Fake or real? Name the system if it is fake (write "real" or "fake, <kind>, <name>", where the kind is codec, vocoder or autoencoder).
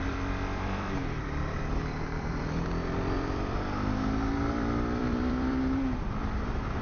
fake, vocoder, BigVGAN v2